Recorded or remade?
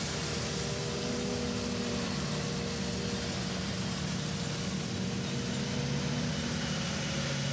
recorded